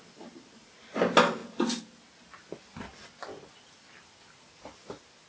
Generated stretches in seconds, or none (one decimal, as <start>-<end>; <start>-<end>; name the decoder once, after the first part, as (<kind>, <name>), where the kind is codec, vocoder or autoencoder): none